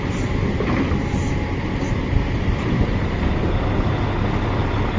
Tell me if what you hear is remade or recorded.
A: recorded